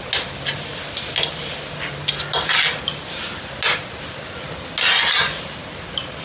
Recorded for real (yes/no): yes